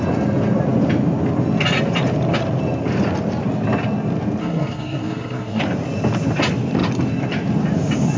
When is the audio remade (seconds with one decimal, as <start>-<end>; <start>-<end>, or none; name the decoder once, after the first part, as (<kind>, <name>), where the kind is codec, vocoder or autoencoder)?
4.4-5.6 (codec, SNAC)